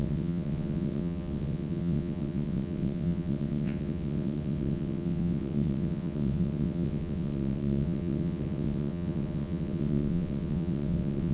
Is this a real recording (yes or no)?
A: no